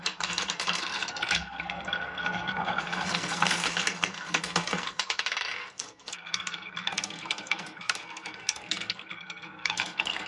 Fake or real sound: fake